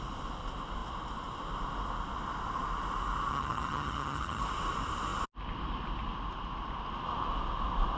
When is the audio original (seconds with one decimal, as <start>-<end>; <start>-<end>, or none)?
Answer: 0.0-3.3; 4.4-8.0